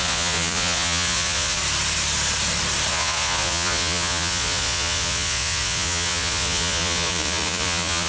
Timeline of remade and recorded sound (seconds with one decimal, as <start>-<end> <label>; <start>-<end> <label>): 0.0-1.6 remade; 1.6-2.9 recorded; 2.9-8.1 remade